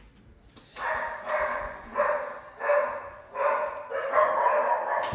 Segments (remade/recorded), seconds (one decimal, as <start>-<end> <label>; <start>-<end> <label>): 0.0-1.5 recorded; 1.5-2.0 remade; 2.0-2.8 recorded; 2.8-3.9 remade; 3.9-5.1 recorded